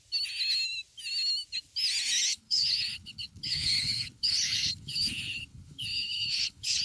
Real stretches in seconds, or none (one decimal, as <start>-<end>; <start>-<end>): 0.0-2.3